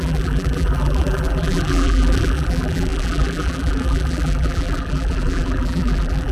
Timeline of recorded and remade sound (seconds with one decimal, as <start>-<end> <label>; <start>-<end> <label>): 0.0-6.3 remade